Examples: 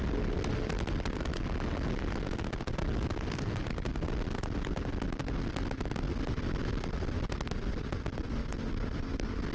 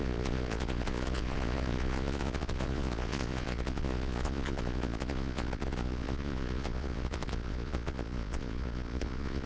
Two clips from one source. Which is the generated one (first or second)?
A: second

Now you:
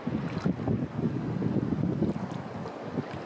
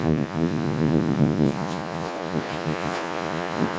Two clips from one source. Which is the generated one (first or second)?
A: second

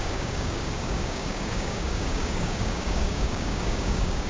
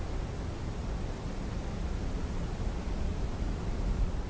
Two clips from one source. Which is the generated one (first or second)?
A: first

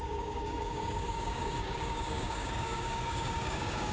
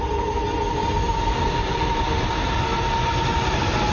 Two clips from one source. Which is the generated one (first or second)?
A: first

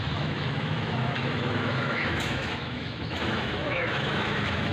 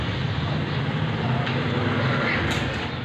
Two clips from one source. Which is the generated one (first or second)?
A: first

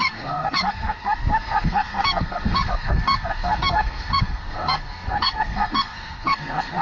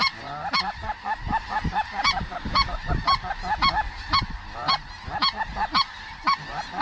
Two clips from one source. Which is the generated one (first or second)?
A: first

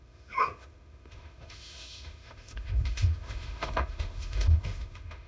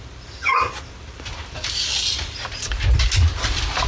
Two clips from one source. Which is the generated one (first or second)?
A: first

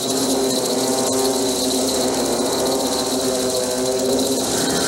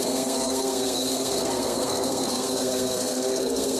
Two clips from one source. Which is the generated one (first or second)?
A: second